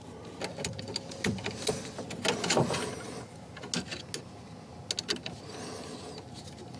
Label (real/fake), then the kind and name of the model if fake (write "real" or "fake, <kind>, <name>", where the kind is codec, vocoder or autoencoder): real